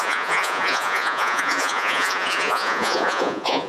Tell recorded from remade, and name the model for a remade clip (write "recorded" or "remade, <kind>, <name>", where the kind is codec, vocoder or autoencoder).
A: remade, vocoder, Vocos